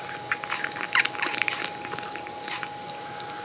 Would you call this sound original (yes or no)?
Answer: yes